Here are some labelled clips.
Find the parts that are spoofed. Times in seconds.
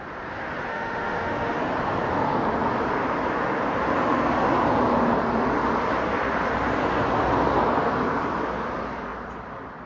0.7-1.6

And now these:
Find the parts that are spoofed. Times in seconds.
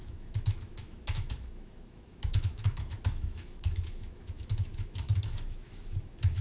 0.0-6.4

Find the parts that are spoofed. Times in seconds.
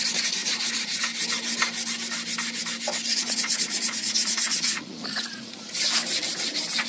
0.4-1.0; 3.1-5.7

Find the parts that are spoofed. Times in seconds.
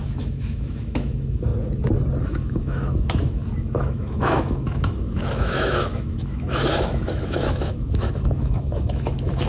0.0-1.5; 2.2-9.5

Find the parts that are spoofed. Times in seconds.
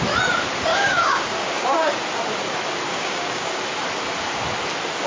0.7-1.9; 2.9-3.6